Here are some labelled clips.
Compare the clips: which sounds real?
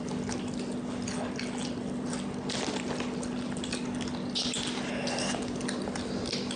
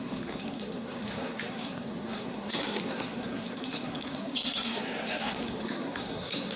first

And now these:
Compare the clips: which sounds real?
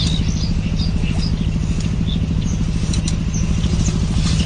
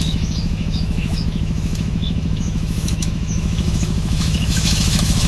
first